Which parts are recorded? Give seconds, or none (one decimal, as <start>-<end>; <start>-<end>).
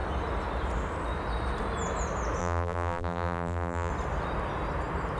0.0-2.4; 3.9-5.2